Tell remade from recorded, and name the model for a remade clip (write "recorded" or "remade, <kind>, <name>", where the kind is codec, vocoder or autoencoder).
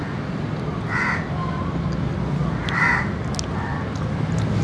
recorded